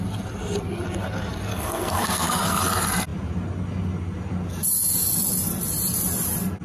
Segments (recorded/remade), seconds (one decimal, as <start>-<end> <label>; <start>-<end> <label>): 0.0-1.5 recorded; 1.5-2.6 remade; 2.6-6.6 recorded